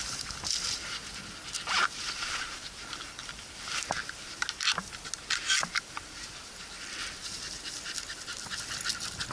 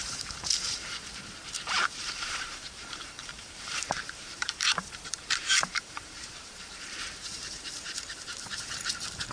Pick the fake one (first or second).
second